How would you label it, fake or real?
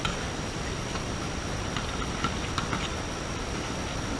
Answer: real